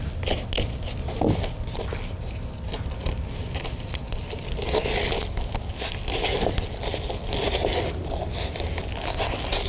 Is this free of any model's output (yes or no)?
yes